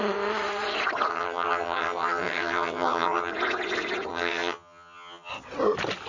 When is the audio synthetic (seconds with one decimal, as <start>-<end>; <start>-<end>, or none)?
1.1-3.3; 4.1-5.3